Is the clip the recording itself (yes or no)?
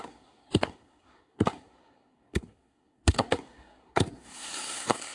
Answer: no